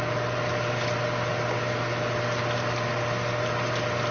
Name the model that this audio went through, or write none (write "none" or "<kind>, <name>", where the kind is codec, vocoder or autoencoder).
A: none